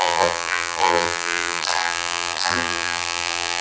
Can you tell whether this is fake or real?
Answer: fake